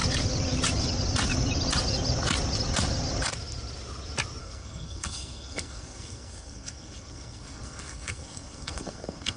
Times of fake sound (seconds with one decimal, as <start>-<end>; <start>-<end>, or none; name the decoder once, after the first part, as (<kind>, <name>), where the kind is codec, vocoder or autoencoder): 4.4-9.4 (codec, SNAC)